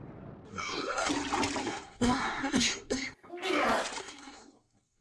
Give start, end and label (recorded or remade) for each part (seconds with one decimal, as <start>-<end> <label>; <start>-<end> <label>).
0.0-0.5 recorded; 0.5-1.1 remade; 1.1-1.6 recorded; 1.6-3.3 remade; 3.3-4.0 recorded; 4.0-5.0 remade